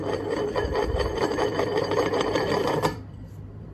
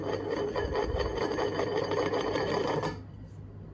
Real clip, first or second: second